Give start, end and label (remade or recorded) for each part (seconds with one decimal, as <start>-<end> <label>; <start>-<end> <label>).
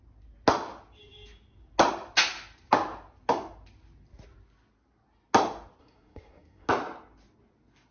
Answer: 0.0-5.8 recorded; 5.8-6.7 remade; 6.7-7.9 recorded